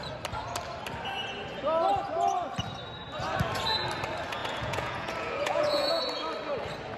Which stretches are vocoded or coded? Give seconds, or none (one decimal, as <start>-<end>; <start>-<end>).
4.4-6.0